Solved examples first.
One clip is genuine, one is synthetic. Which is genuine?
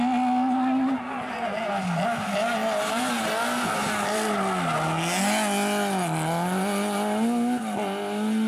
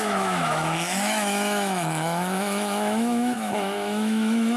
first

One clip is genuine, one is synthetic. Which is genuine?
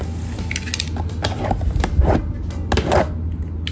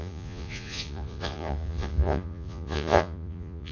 first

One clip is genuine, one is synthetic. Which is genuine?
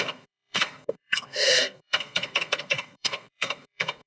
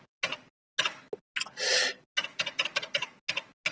second